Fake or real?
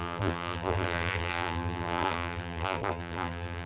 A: fake